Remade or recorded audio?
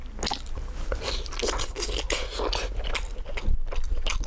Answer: recorded